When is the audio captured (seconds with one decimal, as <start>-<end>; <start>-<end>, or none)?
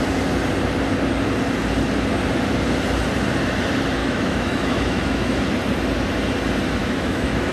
0.0-4.0; 5.4-6.8